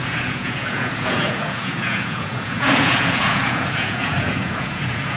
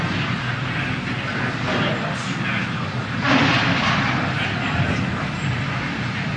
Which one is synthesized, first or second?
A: first